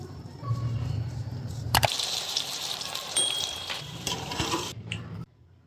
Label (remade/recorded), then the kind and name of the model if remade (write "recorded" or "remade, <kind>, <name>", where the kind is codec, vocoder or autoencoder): remade, vocoder, BigVGAN v2